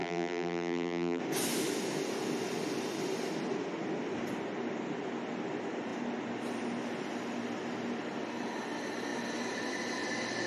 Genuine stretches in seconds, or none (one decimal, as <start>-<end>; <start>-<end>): 1.2-10.5